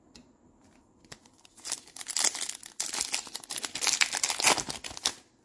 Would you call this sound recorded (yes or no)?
yes